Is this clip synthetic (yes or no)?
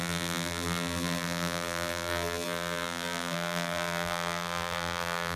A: yes